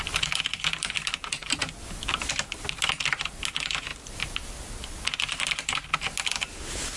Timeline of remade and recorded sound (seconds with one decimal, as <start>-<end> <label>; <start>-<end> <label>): 0.0-3.9 recorded; 3.9-4.5 remade; 4.5-7.0 recorded